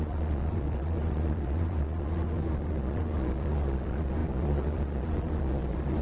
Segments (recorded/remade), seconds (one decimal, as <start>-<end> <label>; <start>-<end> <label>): 0.0-6.0 remade

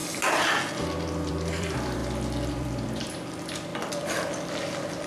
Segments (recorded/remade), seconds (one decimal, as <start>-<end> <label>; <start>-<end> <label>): 0.0-1.3 recorded; 1.3-2.0 remade; 2.0-2.5 recorded; 2.5-3.7 remade; 3.7-5.1 recorded

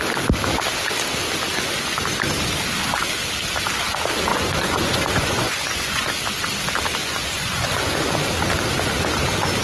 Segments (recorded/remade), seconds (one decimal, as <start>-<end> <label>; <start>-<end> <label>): 0.0-1.5 recorded; 1.5-2.0 remade; 2.0-4.3 recorded; 4.3-6.1 remade; 6.1-7.0 recorded; 7.0-8.1 remade; 8.1-9.6 recorded

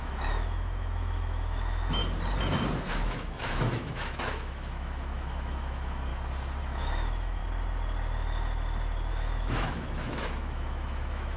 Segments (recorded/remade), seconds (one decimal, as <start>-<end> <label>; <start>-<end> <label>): 0.0-2.0 remade; 2.0-2.8 recorded; 2.8-6.1 remade; 6.1-6.6 recorded; 6.6-7.4 remade; 7.4-9.1 recorded; 9.1-11.4 remade

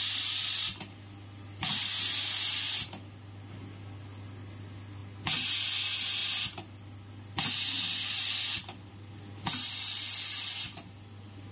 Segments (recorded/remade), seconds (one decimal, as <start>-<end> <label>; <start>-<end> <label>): 0.0-11.5 recorded